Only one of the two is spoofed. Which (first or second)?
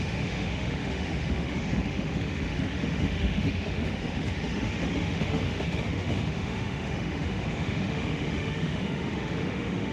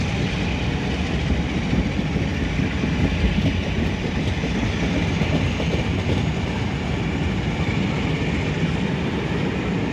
first